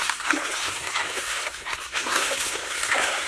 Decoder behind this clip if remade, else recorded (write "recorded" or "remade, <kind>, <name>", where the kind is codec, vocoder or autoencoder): remade, codec, SNAC